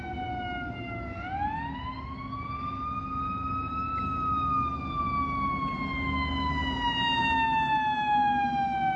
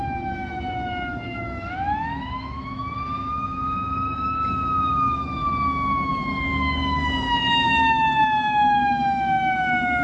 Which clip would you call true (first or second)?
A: first